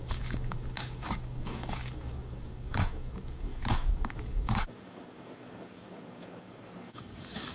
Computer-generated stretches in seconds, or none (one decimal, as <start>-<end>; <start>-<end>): 0.0-7.5